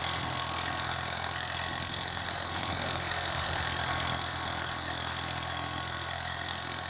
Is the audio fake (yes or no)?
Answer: yes